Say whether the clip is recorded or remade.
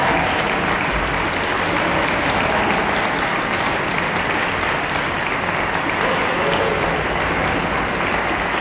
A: recorded